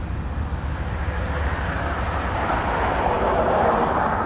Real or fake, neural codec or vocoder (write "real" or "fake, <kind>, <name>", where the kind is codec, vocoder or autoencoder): real